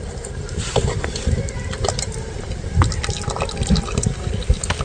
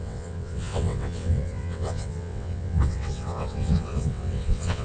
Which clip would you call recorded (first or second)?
first